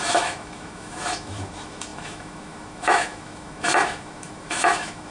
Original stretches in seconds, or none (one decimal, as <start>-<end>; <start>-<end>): none